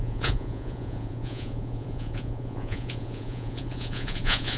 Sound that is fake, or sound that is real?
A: fake